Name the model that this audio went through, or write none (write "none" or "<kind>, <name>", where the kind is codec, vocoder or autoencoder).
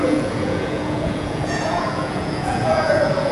vocoder, Vocos